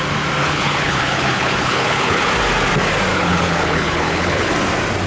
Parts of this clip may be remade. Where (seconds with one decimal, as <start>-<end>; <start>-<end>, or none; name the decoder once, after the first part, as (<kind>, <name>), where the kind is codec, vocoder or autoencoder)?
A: 0.4-2.3 (codec, HILCodec); 3.1-4.5

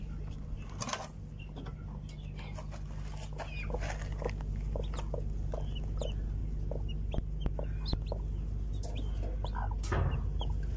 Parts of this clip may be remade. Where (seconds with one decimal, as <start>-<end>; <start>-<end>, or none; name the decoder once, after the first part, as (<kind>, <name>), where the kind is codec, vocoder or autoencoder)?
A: none

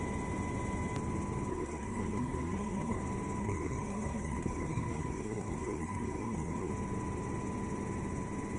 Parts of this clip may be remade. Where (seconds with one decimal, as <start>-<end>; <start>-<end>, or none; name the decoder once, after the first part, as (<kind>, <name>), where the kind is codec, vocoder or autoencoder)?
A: 1.5-3.0 (codec, SNAC); 3.4-6.7